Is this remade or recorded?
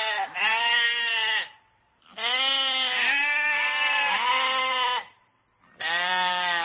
remade